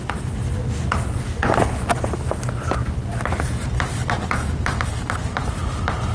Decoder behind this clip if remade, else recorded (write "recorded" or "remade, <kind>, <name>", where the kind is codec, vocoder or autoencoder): recorded